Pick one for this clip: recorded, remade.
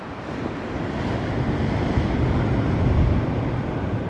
recorded